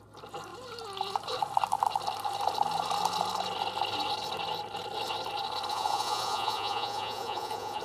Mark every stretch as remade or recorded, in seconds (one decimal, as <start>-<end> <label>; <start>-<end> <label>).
0.0-5.7 recorded; 5.7-7.8 remade

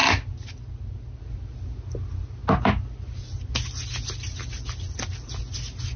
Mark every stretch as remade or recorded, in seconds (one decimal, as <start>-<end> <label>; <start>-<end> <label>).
0.0-6.0 recorded

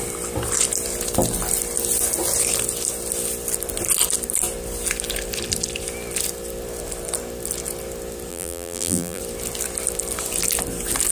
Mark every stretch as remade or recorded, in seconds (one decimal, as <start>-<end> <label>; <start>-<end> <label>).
0.0-8.3 recorded; 8.3-9.2 remade; 9.2-11.1 recorded

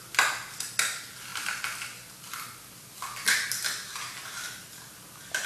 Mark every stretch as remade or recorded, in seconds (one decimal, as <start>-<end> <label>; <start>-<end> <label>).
0.0-5.5 recorded

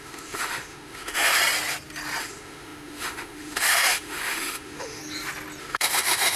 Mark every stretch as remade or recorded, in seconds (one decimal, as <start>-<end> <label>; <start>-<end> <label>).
0.0-1.4 remade; 1.4-2.2 recorded; 2.2-5.0 remade; 5.0-5.6 recorded; 5.6-6.4 remade

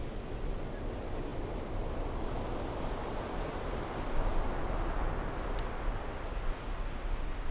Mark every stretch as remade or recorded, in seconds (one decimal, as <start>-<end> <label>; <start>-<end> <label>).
0.0-7.5 recorded

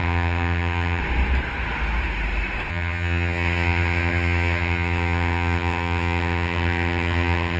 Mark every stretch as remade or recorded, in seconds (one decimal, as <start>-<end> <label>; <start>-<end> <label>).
0.0-1.0 remade; 1.0-2.7 recorded; 2.7-7.6 remade